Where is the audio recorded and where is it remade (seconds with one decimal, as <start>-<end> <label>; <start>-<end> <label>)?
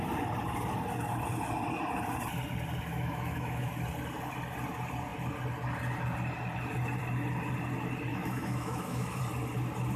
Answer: 0.0-2.9 recorded; 2.9-3.7 remade; 3.7-8.1 recorded; 8.1-9.2 remade; 9.2-10.0 recorded